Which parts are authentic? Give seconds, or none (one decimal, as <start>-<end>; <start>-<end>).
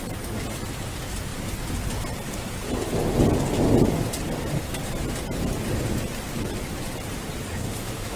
0.0-7.5